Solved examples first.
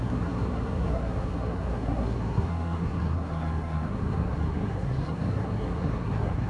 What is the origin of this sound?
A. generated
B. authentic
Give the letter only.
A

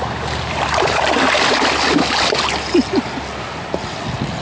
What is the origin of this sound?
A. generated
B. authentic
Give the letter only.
B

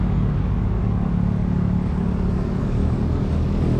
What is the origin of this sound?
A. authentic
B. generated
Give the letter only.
B